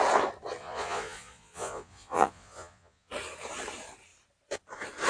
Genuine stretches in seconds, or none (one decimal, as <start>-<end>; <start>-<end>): 0.0-0.6; 3.1-5.1